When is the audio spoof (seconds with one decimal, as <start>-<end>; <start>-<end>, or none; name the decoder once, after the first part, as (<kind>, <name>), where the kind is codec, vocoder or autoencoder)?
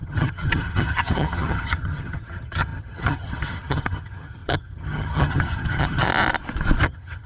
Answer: 0.0-6.1 (vocoder, HiFi-GAN); 6.8-7.3